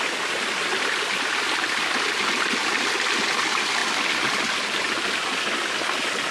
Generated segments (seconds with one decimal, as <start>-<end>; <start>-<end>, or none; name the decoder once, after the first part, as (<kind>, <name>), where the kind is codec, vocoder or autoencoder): none